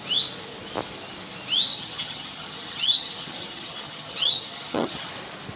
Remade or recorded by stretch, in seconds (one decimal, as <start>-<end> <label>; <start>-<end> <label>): 0.0-1.7 recorded; 1.7-5.1 remade; 5.1-5.6 recorded